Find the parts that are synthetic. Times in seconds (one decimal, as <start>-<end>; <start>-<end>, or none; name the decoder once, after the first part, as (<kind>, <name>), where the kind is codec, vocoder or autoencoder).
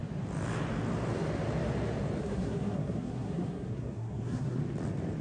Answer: 2.2-4.6 (codec, SNAC)